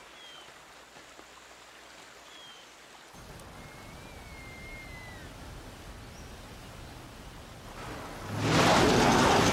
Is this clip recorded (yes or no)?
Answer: yes